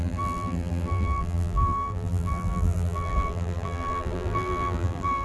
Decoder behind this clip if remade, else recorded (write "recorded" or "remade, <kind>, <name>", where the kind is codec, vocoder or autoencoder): remade, vocoder, BigVGAN v2